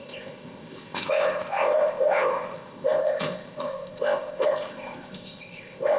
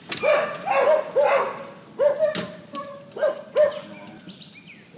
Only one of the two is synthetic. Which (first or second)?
first